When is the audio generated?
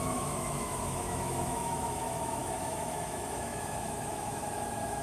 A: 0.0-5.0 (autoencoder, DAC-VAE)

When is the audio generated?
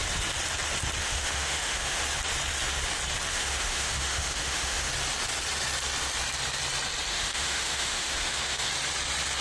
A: 1.0-2.0 (autoencoder, DAC-VAE); 3.3-4.9; 7.1-8.7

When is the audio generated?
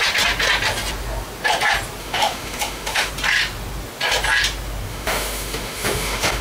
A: 2.0-3.1 (autoencoder, DAC-VAE); 4.9-6.4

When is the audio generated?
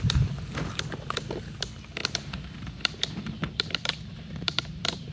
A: none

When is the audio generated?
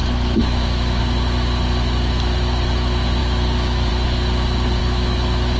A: 0.0-1.0 (autoencoder, DAC-VAE); 3.2-3.9; 4.8-5.6